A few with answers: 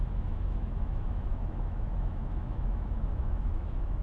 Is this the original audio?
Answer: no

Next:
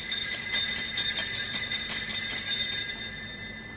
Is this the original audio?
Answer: yes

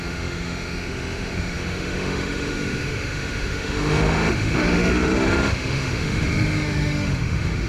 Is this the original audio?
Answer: no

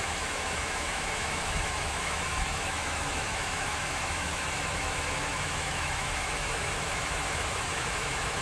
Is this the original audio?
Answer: no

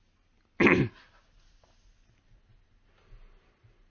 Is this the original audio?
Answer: yes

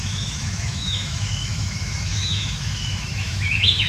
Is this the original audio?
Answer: no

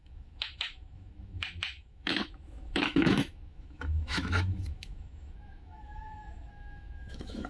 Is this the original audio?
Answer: no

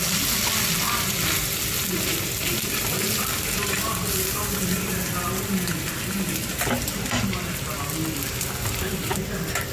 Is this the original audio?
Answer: yes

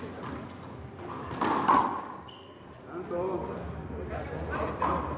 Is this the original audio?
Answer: yes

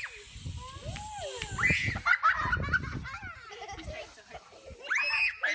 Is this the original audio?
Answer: yes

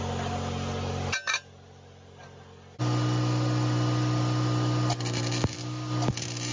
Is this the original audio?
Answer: yes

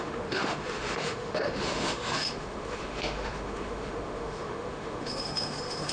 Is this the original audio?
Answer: no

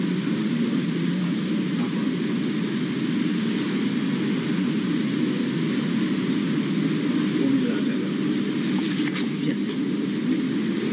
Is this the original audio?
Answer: yes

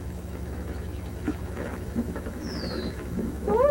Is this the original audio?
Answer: no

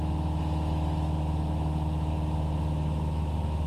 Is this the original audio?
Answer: no